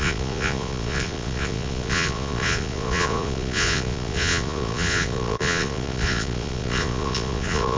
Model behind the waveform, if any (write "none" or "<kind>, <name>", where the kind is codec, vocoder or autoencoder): vocoder, Vocos